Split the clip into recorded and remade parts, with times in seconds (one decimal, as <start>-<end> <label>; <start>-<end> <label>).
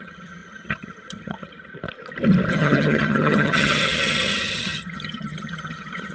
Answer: 0.0-1.7 remade; 1.7-2.5 recorded; 2.5-6.1 remade